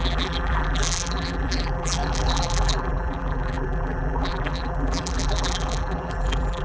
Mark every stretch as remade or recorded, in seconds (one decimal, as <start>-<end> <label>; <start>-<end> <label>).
0.0-6.6 remade